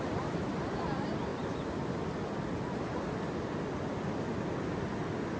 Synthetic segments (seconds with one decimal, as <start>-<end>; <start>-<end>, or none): none